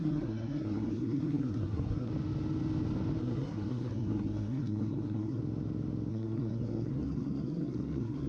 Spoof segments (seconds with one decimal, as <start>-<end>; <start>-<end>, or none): 0.0-2.1; 3.2-5.4; 6.1-8.3